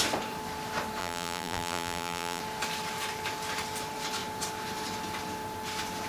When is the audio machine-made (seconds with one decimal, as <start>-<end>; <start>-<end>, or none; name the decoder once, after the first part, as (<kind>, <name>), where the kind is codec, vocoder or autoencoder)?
1.0-2.4 (vocoder, BigVGAN v2)